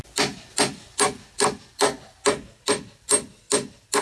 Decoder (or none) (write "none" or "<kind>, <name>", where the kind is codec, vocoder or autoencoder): none